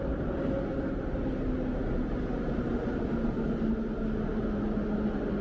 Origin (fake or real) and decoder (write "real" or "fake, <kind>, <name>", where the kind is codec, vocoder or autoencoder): real